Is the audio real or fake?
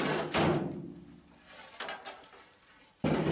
real